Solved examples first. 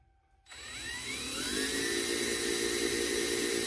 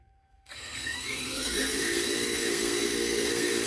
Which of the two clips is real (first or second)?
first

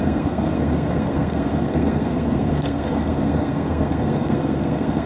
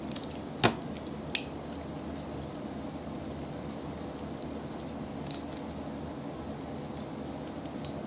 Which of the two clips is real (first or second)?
second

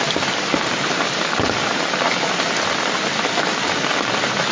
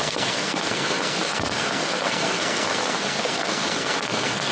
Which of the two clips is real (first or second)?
first